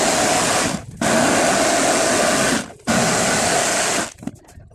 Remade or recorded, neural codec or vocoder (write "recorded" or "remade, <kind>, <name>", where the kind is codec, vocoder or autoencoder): recorded